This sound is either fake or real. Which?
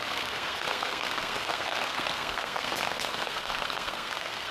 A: fake